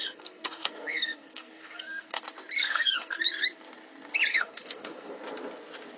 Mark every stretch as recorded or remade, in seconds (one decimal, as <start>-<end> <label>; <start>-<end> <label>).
0.0-2.2 remade; 2.2-2.6 recorded; 2.6-3.2 remade; 3.2-4.3 recorded; 4.3-5.1 remade; 5.1-6.0 recorded